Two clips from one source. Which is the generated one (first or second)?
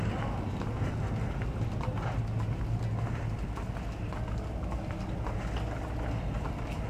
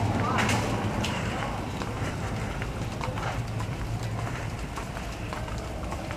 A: second